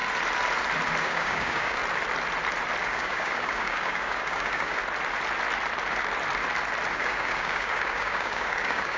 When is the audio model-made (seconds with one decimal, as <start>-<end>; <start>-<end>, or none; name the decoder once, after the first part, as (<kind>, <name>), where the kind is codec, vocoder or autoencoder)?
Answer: 1.0-1.8 (codec, DAC); 2.8-4.8; 6.9-9.0